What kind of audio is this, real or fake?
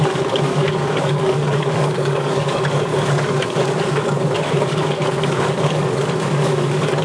fake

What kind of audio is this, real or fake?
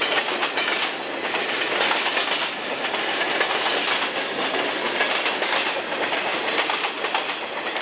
real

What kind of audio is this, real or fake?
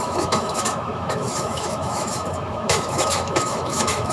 fake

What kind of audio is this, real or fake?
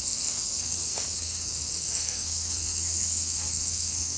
fake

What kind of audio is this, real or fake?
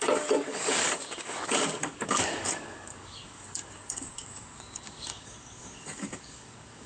fake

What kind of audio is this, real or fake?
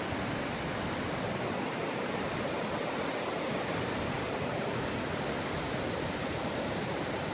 real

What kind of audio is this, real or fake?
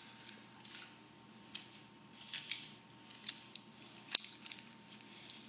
real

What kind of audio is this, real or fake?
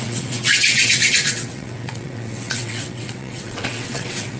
fake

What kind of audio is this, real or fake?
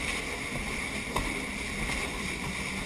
real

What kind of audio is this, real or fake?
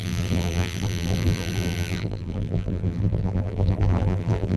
fake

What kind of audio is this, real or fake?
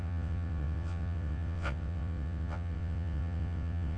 fake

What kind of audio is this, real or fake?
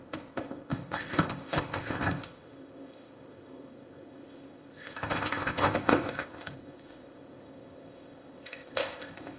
fake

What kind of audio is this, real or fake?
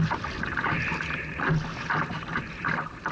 real